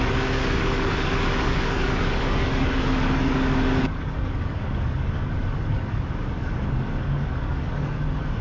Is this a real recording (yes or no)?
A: no